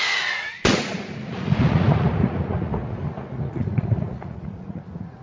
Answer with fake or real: fake